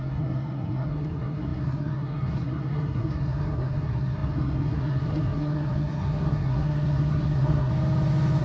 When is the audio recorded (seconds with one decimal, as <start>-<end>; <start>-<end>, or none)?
7.7-8.4